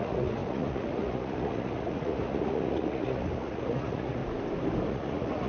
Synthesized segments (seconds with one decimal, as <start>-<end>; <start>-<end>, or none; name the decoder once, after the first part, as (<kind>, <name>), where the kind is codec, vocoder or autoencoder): 0.0-4.2 (vocoder, Vocos); 4.9-5.5